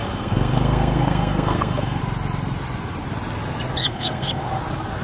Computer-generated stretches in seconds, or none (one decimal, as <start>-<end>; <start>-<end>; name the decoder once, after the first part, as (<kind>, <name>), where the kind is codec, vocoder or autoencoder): 0.0-2.0 (codec, SNAC); 3.8-4.5